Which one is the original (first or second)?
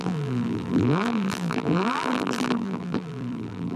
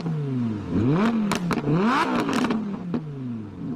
second